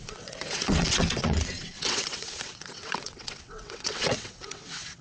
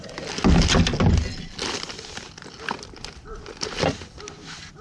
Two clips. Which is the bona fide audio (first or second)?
second